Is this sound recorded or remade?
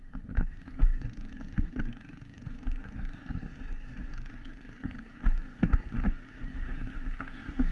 remade